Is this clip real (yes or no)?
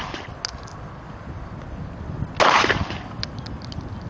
yes